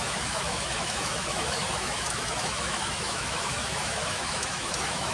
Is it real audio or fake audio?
fake